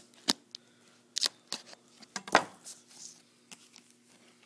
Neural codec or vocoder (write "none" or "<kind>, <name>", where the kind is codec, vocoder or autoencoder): none